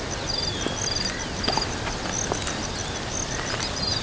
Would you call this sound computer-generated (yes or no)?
no